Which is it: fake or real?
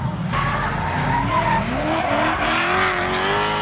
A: real